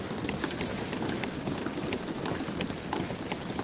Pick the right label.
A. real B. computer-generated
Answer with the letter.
A